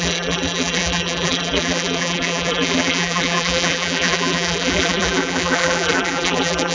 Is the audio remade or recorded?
remade